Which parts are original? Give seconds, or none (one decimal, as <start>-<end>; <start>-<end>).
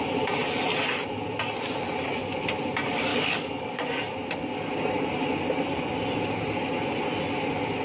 0.0-3.1; 4.1-7.8